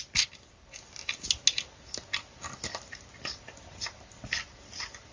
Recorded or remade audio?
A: recorded